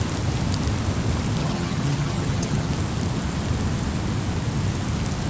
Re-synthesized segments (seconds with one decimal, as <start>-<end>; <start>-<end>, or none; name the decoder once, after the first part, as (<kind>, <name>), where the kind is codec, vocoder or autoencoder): 1.4-2.7 (vocoder, HiFi-GAN)